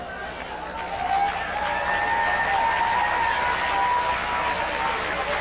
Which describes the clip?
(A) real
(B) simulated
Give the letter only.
A